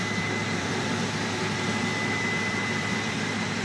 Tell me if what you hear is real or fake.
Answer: fake